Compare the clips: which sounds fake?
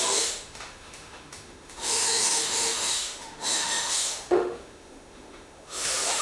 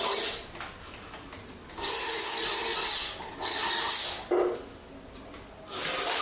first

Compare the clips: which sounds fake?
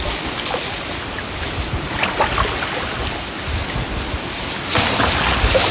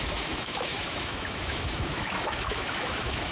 second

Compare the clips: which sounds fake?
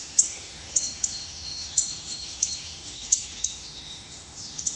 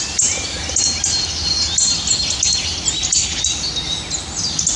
first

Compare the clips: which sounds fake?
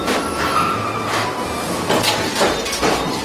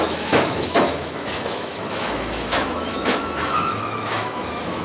second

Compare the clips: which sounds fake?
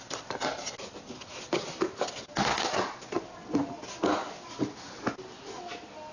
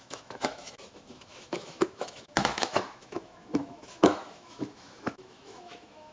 second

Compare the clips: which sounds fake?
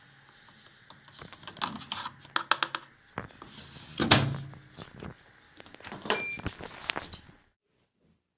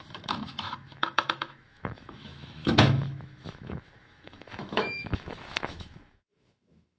second